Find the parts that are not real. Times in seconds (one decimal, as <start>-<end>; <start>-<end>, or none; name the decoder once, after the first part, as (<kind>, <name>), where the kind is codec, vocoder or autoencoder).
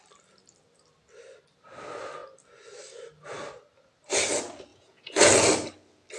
4.7-5.3 (vocoder, Vocos)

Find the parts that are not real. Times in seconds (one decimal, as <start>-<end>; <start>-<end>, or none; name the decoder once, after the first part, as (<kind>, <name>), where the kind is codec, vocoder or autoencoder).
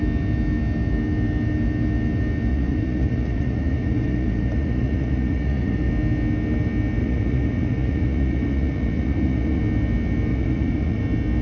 2.5-5.9 (vocoder, Vocos); 7.0-9.6; 10.3-11.0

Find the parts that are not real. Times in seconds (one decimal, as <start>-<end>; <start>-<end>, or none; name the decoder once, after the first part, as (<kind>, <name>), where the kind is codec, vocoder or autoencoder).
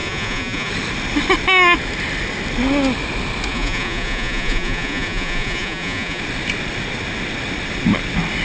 0.0-0.7 (vocoder, Vocos); 3.5-6.2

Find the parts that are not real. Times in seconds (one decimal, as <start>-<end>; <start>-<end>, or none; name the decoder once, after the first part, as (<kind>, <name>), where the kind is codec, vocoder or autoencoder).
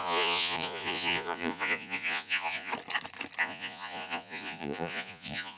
0.0-2.7 (vocoder, Vocos); 3.4-5.6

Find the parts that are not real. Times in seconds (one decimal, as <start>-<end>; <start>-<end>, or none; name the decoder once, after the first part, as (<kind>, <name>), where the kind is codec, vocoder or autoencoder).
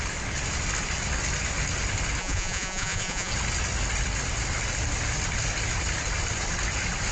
2.2-3.3 (vocoder, Vocos)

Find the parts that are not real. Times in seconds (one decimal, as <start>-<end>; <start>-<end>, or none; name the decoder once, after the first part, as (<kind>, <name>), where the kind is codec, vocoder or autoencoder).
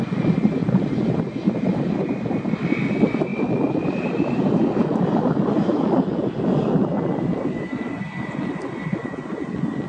none